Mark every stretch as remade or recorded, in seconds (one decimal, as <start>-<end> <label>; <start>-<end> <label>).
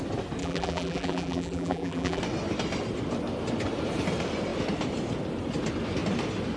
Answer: 0.0-0.4 recorded; 0.4-2.2 remade; 2.2-6.6 recorded